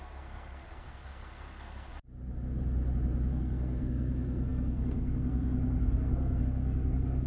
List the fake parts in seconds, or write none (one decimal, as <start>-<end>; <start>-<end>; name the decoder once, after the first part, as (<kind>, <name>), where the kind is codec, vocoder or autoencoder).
0.0-1.9 (codec, SNAC); 3.3-7.3

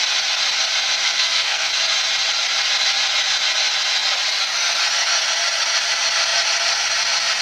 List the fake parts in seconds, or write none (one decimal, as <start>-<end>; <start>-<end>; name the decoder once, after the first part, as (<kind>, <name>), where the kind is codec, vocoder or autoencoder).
1.0-1.7 (codec, SNAC)

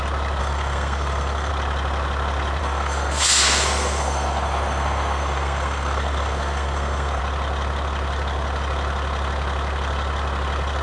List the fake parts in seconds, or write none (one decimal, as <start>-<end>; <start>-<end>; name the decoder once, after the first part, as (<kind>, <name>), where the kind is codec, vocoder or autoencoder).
0.4-1.5 (codec, SNAC); 2.6-7.2

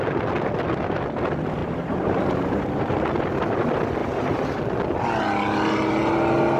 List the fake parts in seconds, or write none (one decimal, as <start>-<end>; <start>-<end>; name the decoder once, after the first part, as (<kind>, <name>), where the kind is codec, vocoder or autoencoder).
1.6-2.9 (vocoder, BigVGAN v2); 4.0-4.6